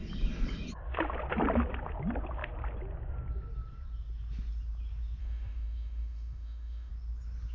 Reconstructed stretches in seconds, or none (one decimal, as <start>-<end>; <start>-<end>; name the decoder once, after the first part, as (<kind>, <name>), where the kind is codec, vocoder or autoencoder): 5.2-6.9 (autoencoder, DAC-VAE)

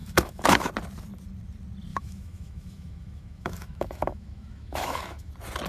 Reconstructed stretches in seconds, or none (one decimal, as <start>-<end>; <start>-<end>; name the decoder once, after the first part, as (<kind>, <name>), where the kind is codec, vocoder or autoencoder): 0.0-0.7 (autoencoder, DAC-VAE); 1.9-5.3

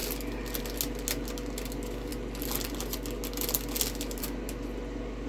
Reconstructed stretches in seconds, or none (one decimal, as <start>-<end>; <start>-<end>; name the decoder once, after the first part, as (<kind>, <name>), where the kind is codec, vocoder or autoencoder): none

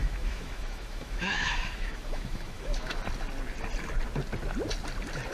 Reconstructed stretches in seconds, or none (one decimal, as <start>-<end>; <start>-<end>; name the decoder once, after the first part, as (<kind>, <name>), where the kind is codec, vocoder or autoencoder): 0.0-3.0 (autoencoder, DAC-VAE)

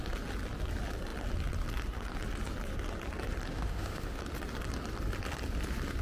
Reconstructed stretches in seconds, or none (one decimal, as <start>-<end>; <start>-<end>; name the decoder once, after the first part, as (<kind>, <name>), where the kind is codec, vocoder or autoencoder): 3.5-4.2 (autoencoder, DAC-VAE)

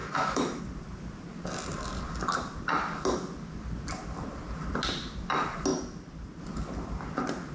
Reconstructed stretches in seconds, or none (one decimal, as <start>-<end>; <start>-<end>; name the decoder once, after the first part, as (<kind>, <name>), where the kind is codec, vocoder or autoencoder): 0.0-0.6 (autoencoder, DAC-VAE)